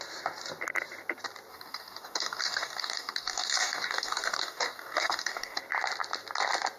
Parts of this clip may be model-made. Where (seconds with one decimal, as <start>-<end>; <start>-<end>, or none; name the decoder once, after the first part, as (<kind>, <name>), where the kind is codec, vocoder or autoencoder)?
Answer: 1.5-5.6 (codec, DAC)